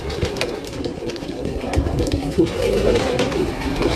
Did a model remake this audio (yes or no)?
yes